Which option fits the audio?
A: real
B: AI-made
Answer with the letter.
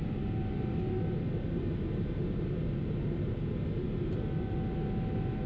A